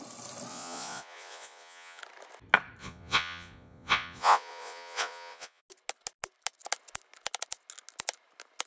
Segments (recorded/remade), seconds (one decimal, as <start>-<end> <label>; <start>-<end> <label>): 0.0-0.5 recorded; 0.5-2.0 remade; 2.0-2.8 recorded; 2.8-5.6 remade; 5.6-8.7 recorded